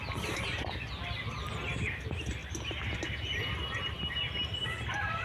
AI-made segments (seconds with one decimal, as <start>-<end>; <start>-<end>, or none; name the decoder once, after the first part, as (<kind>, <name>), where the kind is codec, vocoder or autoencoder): none